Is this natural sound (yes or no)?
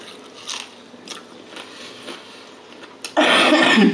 yes